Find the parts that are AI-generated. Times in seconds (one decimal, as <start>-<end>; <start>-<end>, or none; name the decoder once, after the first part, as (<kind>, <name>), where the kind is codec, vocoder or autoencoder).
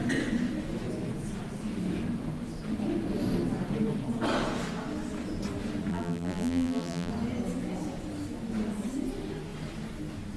5.9-7.1 (vocoder, BigVGAN v2)